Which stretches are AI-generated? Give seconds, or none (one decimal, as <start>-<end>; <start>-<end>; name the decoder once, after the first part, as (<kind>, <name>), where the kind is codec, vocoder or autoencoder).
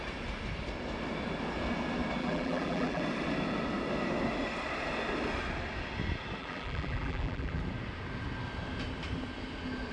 2.2-3.0 (vocoder, BigVGAN v2); 6.4-7.6